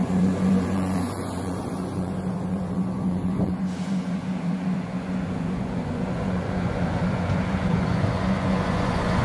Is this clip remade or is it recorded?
remade